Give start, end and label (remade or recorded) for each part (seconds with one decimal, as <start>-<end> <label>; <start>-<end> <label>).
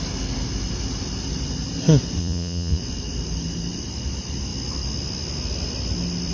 0.0-2.2 recorded; 2.2-2.8 remade; 2.8-6.3 recorded